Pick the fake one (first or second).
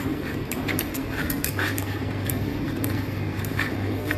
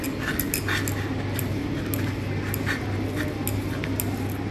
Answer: first